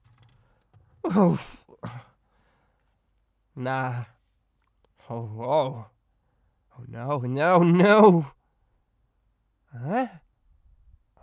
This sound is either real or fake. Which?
real